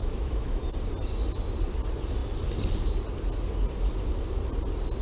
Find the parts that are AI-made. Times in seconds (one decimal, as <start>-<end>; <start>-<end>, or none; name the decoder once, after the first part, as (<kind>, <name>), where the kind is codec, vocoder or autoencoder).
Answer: 0.0-0.6 (autoencoder, DAC-VAE)